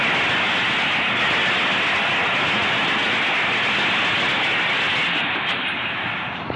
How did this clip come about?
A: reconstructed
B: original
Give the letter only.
B